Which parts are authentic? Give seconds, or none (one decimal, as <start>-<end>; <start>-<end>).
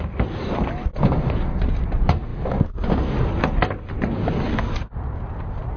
0.0-5.8